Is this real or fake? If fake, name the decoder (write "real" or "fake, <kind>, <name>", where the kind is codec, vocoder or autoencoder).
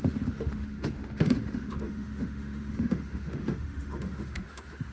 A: fake, autoencoder, DAC-VAE